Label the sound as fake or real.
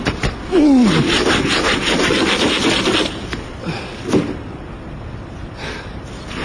real